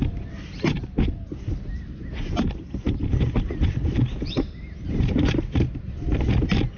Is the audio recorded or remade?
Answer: recorded